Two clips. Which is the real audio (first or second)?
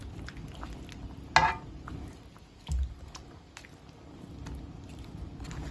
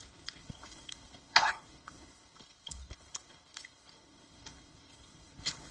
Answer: first